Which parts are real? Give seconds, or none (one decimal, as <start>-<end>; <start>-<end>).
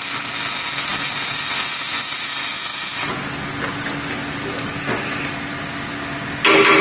0.0-6.8